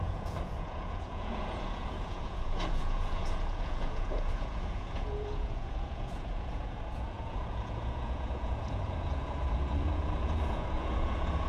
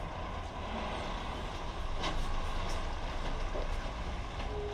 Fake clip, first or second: first